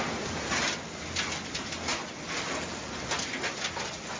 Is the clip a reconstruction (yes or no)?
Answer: no